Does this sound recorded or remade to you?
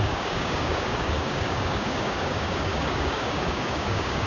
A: remade